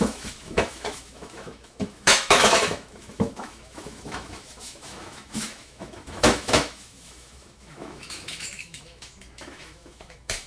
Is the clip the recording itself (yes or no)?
no